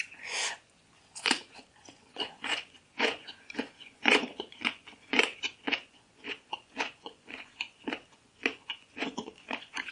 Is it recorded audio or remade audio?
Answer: remade